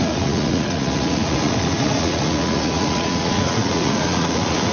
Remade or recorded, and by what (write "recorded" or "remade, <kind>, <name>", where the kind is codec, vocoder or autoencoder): remade, vocoder, Vocos